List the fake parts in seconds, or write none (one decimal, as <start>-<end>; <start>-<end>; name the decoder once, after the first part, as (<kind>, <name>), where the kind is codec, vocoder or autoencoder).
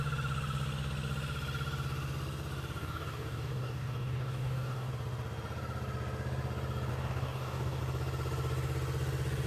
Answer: 2.8-4.9 (codec, DAC); 6.9-7.8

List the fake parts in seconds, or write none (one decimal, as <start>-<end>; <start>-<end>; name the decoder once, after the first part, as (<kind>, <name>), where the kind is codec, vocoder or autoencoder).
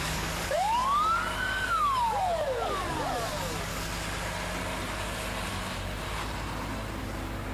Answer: 0.0-3.7 (codec, DAC); 7.0-7.5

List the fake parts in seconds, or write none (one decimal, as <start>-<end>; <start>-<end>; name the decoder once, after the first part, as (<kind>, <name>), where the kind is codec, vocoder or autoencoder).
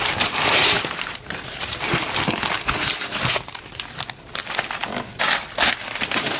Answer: none